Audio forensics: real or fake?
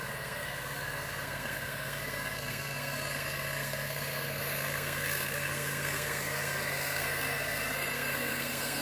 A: fake